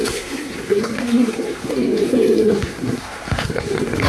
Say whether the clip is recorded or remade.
remade